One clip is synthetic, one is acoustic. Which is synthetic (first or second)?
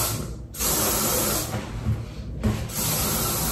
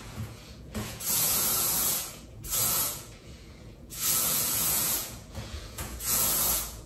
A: second